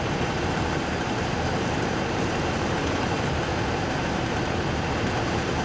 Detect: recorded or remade remade